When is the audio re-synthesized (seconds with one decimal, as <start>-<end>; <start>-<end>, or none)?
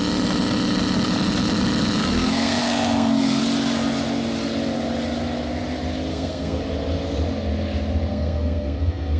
2.0-3.4; 6.1-6.6; 8.1-9.2